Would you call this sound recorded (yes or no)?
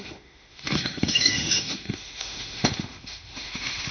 no